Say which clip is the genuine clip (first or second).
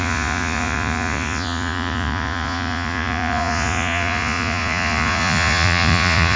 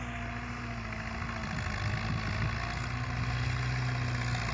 second